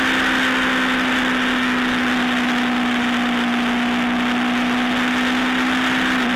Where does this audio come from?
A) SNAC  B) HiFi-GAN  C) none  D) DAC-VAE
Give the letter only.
C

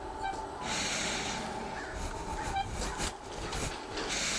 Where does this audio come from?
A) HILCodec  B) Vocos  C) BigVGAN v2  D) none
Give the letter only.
D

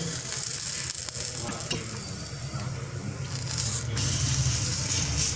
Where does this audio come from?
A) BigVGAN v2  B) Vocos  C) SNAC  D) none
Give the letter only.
D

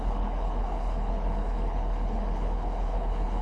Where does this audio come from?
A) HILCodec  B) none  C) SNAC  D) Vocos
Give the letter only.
A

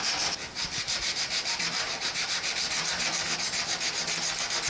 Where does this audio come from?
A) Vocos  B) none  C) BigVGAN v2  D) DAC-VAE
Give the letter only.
C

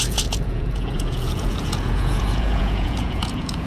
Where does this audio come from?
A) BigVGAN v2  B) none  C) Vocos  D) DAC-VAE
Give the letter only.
C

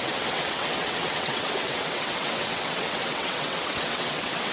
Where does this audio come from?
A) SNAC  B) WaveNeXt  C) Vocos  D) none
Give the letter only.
B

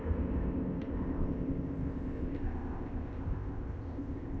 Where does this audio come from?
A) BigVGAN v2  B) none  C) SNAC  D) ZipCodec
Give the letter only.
D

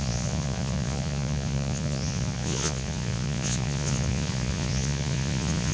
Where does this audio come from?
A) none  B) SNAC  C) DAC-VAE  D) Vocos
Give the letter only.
D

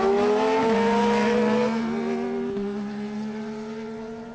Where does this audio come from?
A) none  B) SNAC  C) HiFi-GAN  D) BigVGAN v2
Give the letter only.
A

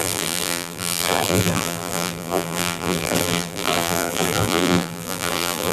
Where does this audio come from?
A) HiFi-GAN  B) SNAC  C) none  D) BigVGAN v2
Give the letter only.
D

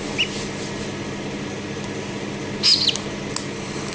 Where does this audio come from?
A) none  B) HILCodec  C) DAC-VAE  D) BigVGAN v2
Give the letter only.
A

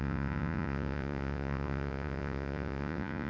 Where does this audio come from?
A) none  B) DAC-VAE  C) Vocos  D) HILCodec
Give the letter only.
C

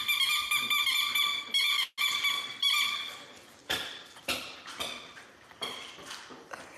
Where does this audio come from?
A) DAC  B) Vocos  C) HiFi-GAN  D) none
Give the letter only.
D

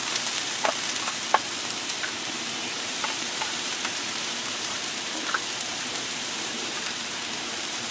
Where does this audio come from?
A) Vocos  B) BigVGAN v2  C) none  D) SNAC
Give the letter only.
B